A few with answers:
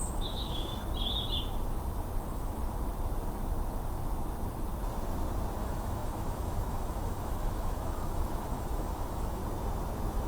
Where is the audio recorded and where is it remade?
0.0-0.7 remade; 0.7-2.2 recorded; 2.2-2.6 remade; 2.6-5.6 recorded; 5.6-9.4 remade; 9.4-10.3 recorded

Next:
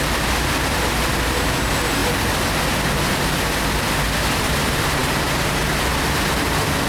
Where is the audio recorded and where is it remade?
0.0-6.9 recorded